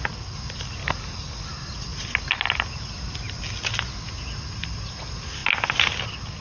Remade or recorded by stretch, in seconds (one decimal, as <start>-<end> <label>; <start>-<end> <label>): 0.0-0.8 recorded; 0.8-1.5 remade; 1.5-6.4 recorded